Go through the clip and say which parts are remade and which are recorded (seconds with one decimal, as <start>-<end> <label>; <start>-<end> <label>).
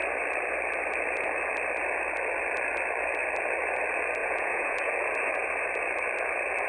0.0-4.2 recorded; 4.2-4.9 remade; 4.9-6.7 recorded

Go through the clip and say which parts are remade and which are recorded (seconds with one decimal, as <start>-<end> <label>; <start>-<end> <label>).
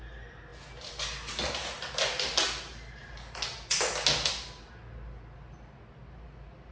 0.0-6.7 recorded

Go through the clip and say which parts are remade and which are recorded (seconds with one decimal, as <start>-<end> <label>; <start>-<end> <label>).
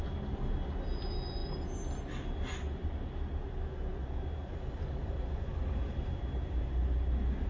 0.0-7.5 recorded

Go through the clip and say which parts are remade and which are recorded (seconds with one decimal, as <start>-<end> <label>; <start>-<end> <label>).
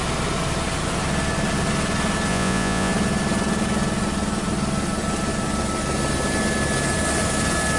0.0-2.3 recorded; 2.3-2.9 remade; 2.9-7.8 recorded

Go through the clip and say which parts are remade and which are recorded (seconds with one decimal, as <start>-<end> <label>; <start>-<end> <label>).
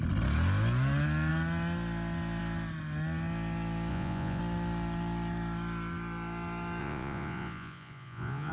0.0-3.9 recorded; 3.9-4.4 remade; 4.4-6.8 recorded; 6.8-8.5 remade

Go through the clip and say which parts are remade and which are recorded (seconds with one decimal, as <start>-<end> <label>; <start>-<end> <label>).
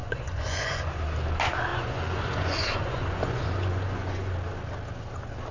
0.0-1.0 remade; 1.0-1.7 recorded; 1.7-4.3 remade; 4.3-5.5 recorded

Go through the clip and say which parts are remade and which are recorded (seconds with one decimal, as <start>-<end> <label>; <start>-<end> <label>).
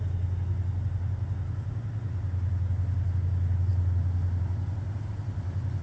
0.0-5.8 recorded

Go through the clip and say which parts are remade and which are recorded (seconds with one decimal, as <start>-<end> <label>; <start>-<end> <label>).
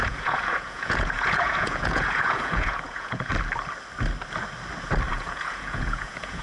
0.0-3.3 remade; 3.3-5.1 recorded; 5.1-6.4 remade